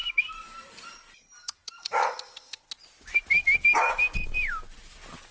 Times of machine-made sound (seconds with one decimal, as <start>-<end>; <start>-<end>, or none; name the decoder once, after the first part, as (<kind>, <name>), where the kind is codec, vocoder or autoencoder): none